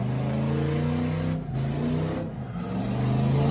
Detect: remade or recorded recorded